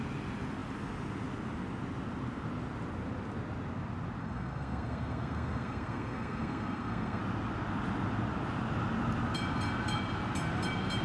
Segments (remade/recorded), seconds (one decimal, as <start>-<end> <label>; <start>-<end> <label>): 0.0-4.2 recorded; 4.2-7.2 remade; 7.2-11.0 recorded